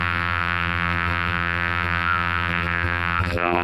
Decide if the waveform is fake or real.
fake